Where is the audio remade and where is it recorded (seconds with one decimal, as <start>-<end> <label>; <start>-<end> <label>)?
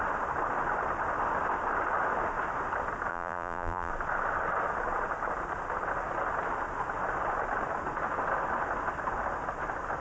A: 0.0-3.1 recorded; 3.1-3.9 remade; 3.9-10.0 recorded